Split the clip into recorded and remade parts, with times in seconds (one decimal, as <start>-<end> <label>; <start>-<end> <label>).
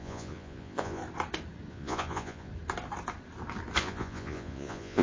0.0-1.0 remade; 1.0-1.7 recorded; 1.7-2.5 remade; 2.5-3.8 recorded; 3.8-5.0 remade